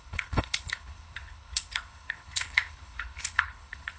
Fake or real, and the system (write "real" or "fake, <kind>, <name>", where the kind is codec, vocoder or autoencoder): fake, codec, HILCodec